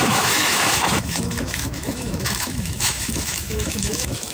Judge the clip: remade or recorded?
remade